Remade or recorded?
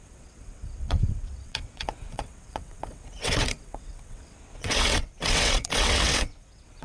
remade